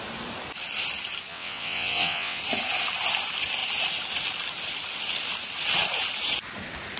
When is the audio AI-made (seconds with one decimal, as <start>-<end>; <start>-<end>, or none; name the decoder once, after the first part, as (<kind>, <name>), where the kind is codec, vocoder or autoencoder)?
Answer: 1.3-2.4 (vocoder, WaveNeXt)